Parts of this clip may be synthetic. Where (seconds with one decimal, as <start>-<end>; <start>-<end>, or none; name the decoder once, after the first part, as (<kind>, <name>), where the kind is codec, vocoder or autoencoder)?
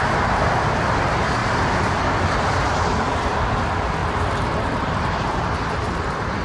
1.4-2.7 (vocoder, BigVGAN v2); 4.0-5.3